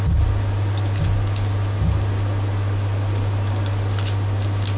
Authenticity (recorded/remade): recorded